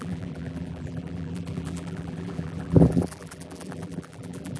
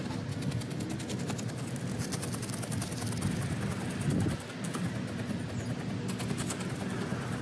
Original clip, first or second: second